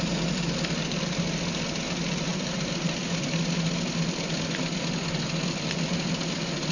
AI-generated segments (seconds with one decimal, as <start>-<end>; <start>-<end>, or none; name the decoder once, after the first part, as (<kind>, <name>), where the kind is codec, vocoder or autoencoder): none